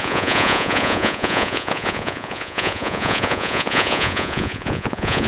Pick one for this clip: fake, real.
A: fake